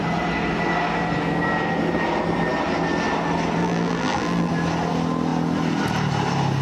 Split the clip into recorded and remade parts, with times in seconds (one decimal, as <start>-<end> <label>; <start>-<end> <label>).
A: 0.0-3.6 recorded; 3.6-4.5 remade; 4.5-6.6 recorded